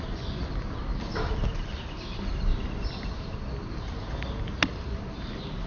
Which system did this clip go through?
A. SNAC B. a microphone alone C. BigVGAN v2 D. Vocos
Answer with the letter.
B